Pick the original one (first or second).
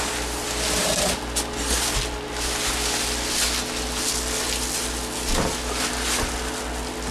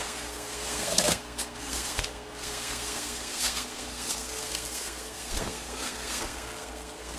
first